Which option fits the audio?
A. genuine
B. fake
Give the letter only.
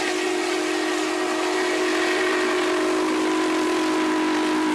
A